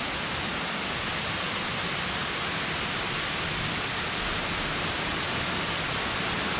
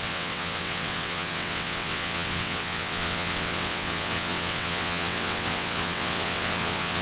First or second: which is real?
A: first